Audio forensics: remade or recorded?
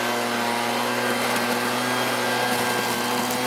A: recorded